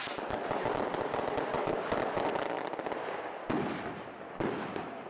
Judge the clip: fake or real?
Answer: real